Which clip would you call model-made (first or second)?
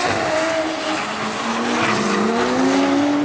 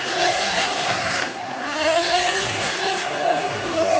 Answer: second